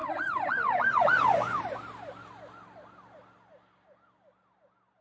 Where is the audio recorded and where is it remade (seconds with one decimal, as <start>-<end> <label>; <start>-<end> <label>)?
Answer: 0.0-1.6 remade; 1.6-5.0 recorded